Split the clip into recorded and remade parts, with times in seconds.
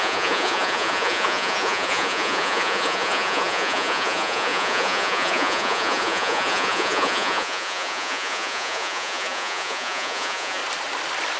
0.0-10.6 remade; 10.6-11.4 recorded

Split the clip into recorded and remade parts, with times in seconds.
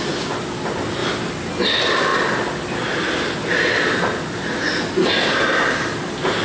0.0-6.4 recorded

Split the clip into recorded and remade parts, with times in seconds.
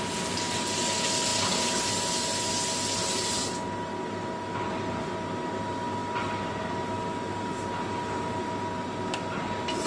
0.0-9.9 recorded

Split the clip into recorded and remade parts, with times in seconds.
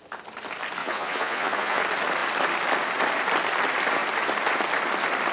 0.0-0.8 recorded; 0.8-1.8 remade; 1.8-5.3 recorded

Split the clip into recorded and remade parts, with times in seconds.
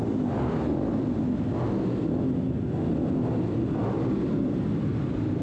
0.0-3.8 recorded; 3.8-4.3 remade; 4.3-5.4 recorded